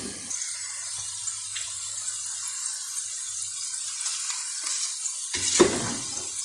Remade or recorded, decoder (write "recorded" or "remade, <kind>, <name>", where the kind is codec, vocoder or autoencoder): recorded